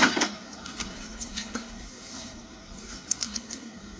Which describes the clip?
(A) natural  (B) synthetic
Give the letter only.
B